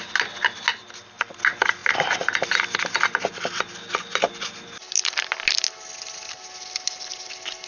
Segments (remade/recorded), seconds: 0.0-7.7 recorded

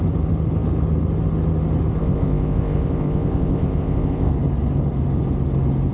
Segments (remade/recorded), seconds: 0.0-2.0 recorded; 2.0-4.3 remade; 4.3-5.9 recorded

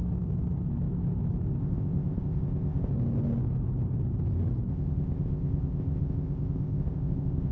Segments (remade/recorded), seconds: 0.0-1.6 recorded; 1.6-2.9 remade; 2.9-4.7 recorded; 4.7-7.5 remade